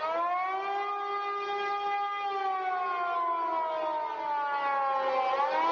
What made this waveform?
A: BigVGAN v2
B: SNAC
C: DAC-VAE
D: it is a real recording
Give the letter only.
D